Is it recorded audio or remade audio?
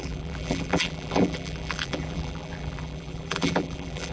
remade